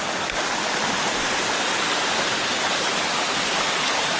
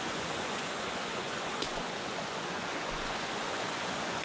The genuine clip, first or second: first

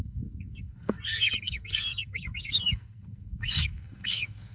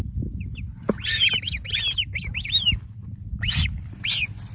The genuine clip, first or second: second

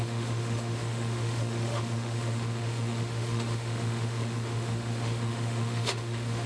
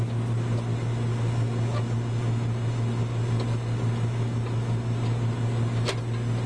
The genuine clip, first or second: second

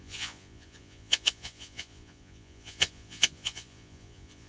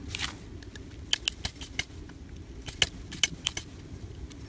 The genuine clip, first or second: second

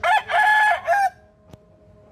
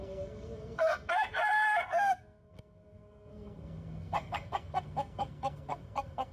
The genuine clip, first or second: first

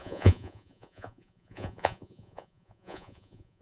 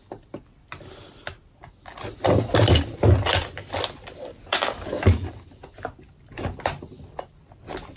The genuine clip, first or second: second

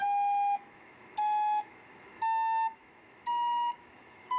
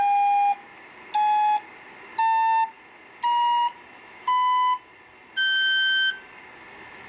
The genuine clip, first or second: second